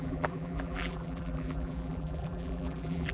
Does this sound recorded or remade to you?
remade